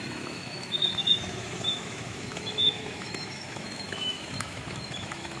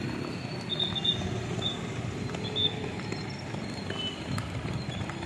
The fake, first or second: first